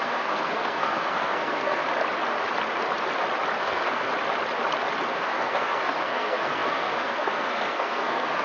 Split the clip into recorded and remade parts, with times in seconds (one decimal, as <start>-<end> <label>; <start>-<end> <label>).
0.0-1.8 remade; 1.8-3.6 recorded; 3.6-4.1 remade; 4.1-5.1 recorded; 5.1-8.4 remade